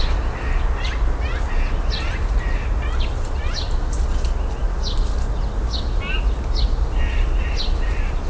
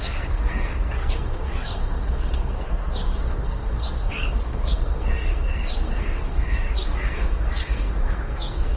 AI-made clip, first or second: second